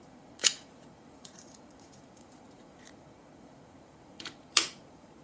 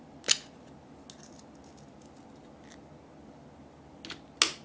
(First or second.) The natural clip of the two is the second